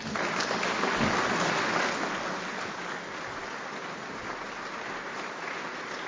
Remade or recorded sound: recorded